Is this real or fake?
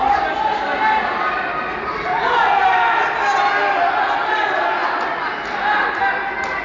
real